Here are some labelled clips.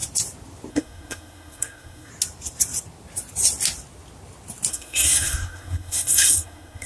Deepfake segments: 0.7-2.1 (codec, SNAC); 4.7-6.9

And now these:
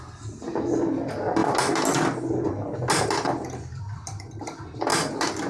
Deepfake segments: none